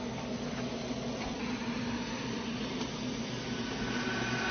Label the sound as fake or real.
real